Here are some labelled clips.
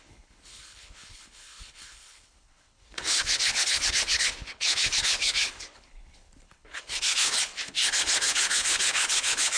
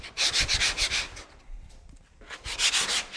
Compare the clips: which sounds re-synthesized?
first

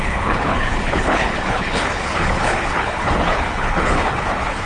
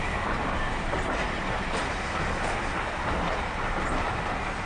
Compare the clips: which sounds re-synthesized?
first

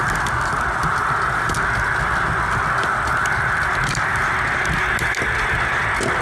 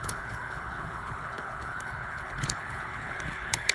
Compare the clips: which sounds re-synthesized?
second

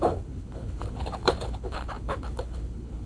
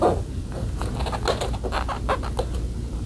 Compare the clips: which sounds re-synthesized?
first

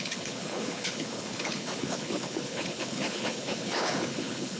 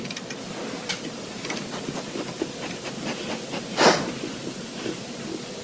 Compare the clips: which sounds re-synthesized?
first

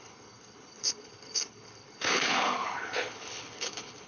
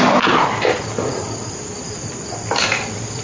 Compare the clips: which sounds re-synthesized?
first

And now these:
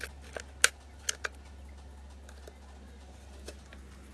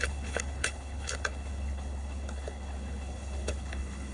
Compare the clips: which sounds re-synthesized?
second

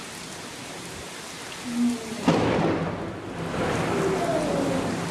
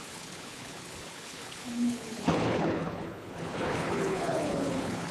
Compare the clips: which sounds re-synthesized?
second